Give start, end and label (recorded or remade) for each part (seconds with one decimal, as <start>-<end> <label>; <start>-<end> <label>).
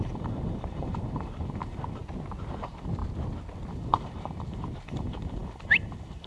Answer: 0.0-2.0 remade; 2.0-2.5 recorded; 2.5-3.0 remade; 3.0-3.7 recorded; 3.7-6.3 remade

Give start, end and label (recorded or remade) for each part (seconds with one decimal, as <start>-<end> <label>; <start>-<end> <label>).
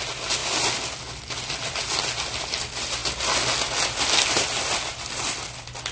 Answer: 0.0-5.9 recorded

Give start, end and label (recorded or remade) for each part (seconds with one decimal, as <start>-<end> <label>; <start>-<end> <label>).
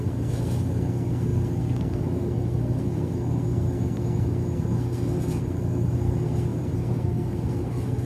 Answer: 0.0-8.1 remade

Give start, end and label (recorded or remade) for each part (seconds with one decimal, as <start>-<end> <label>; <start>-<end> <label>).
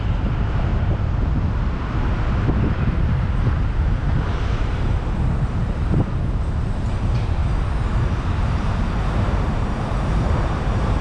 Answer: 0.0-0.7 remade; 0.7-3.1 recorded; 3.1-4.7 remade; 4.7-5.6 recorded; 5.6-7.4 remade; 7.4-9.0 recorded; 9.0-11.0 remade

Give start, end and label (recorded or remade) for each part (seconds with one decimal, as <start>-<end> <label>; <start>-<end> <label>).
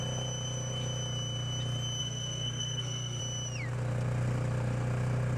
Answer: 0.0-2.0 recorded; 2.0-3.2 remade; 3.2-5.4 recorded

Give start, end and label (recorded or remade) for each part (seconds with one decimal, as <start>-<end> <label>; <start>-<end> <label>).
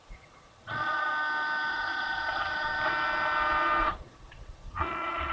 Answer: 0.0-1.1 remade; 1.1-1.7 recorded; 1.7-2.7 remade; 2.7-3.8 recorded; 3.8-5.3 remade